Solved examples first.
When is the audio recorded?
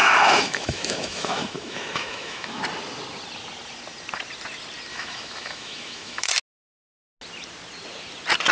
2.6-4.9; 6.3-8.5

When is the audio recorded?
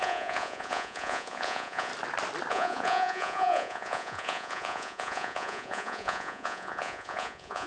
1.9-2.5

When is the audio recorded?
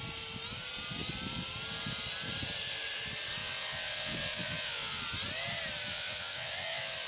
0.0-3.4; 5.0-5.9